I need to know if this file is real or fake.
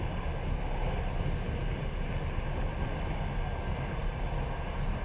real